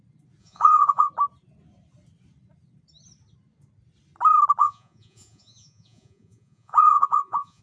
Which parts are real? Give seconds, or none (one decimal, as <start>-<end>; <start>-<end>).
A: 0.0-0.4; 1.1-4.6